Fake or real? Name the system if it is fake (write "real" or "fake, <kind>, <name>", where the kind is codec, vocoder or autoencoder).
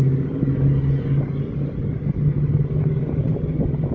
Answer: real